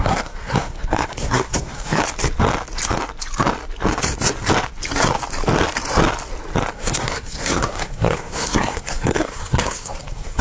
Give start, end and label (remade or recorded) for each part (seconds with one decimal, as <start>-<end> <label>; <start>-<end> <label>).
0.0-2.0 remade; 2.0-6.7 recorded; 6.7-10.4 remade